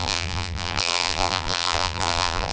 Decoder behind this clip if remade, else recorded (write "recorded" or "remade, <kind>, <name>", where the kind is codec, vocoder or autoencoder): remade, vocoder, BigVGAN v2